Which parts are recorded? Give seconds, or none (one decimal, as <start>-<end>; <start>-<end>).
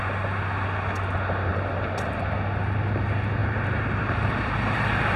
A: 0.0-1.5; 2.2-3.4